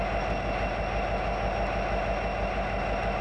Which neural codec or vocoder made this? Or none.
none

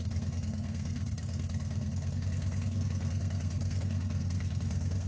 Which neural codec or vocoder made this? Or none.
codec, SNAC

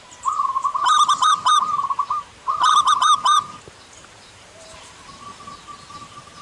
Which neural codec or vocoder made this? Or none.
vocoder, BigVGAN v2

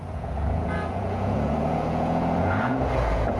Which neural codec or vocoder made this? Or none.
vocoder, Vocos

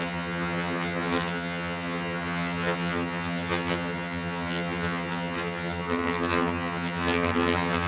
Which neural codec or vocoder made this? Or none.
vocoder, HiFi-GAN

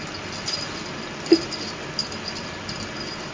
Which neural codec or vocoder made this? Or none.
vocoder, BigVGAN v2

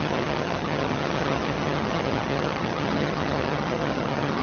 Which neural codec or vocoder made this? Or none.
vocoder, HiFi-GAN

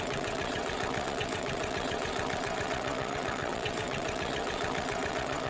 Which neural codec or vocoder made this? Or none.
vocoder, WaveNeXt